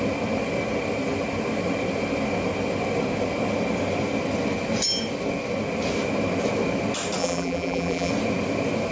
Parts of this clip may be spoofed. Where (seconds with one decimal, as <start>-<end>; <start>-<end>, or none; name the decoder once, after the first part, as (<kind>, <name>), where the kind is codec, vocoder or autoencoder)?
7.2-8.1 (vocoder, BigVGAN v2)